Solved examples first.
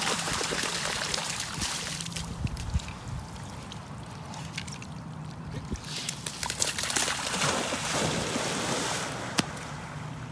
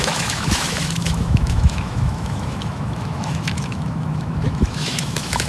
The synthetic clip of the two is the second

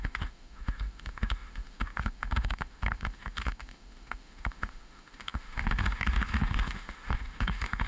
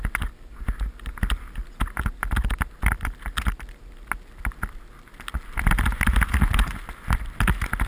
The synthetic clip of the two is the first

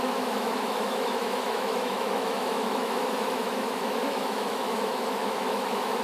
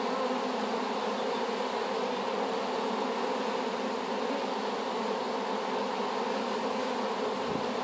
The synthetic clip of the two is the first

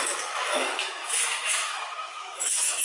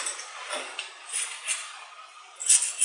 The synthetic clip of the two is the first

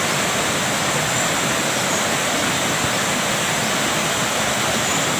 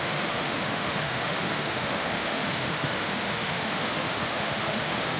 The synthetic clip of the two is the second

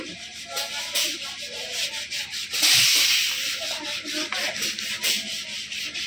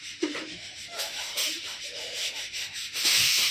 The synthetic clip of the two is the second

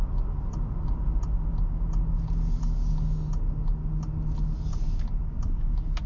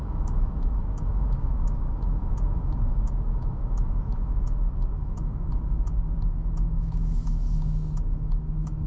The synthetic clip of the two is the second